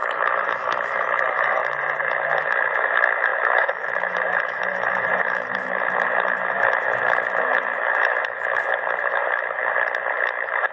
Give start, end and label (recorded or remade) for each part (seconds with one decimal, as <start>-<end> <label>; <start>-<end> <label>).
0.0-1.6 remade; 1.6-2.4 recorded; 2.4-9.6 remade; 9.6-10.1 recorded; 10.1-10.7 remade